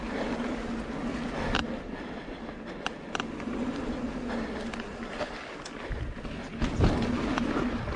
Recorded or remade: recorded